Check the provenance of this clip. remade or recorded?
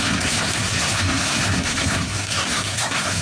remade